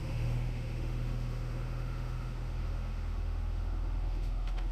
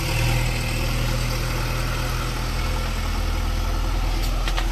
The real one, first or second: second